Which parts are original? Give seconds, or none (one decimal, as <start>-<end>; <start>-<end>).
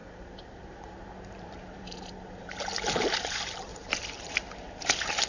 none